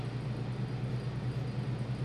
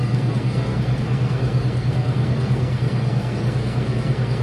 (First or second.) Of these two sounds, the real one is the first